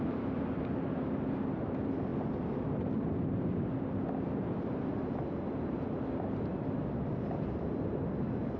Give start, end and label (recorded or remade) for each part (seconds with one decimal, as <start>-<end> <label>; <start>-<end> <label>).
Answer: 0.0-8.6 recorded